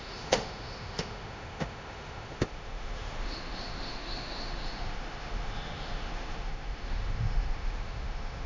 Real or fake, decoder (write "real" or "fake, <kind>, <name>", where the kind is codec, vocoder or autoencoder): fake, autoencoder, DAC-VAE